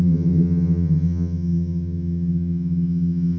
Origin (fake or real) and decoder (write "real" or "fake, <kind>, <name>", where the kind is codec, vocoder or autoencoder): fake, vocoder, HiFi-GAN